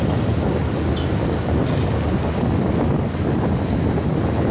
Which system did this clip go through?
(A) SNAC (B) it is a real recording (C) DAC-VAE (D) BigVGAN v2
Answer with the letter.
B